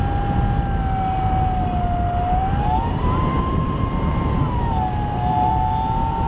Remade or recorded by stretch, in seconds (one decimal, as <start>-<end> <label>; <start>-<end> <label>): 0.0-2.4 recorded; 2.4-6.3 remade